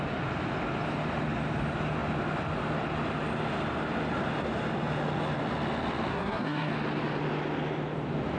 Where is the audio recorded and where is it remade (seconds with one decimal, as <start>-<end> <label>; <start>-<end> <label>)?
0.0-6.1 recorded; 6.1-6.7 remade; 6.7-8.4 recorded